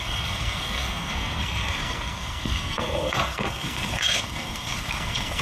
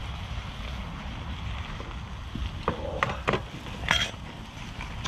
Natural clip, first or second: second